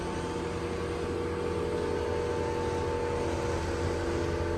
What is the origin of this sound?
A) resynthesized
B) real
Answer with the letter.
B